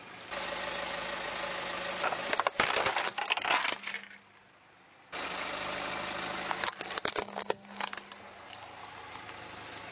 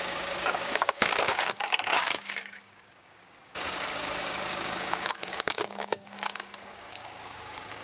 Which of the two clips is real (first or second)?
first